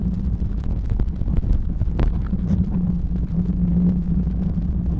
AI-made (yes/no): no